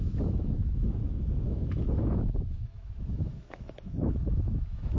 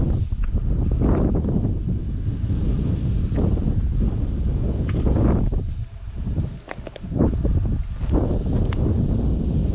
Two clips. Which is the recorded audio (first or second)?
second